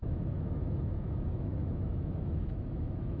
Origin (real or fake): fake